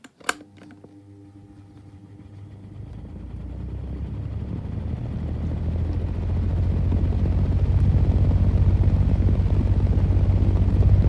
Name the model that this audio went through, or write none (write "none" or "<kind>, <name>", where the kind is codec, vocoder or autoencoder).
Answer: none